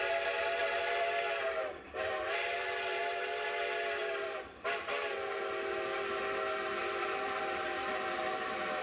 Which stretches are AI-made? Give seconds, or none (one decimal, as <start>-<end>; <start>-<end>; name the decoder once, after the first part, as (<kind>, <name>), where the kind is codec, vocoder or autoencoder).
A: 0.6-3.0 (vocoder, BigVGAN v2); 4.0-4.8; 6.8-8.2